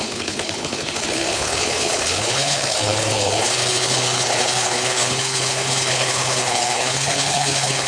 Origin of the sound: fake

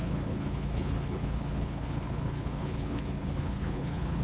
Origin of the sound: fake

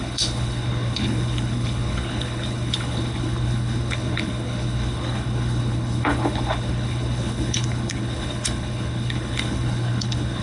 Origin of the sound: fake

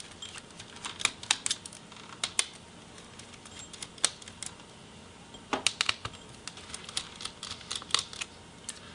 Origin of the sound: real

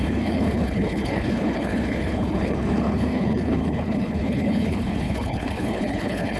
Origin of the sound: fake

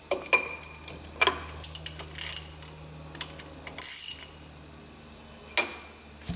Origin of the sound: real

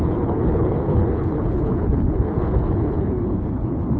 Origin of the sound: fake